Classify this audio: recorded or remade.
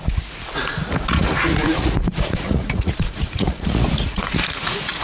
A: remade